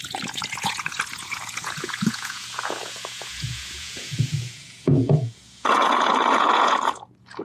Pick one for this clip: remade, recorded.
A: remade